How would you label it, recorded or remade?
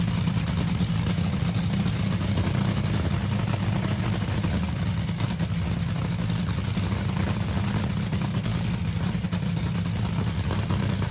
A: recorded